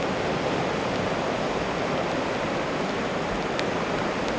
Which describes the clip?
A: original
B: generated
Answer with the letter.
A